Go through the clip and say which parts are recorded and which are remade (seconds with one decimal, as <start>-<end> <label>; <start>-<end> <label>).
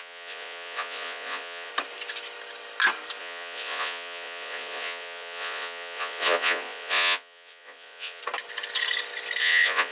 0.0-1.7 remade; 1.7-3.2 recorded; 3.2-8.2 remade; 8.2-9.4 recorded; 9.4-9.9 remade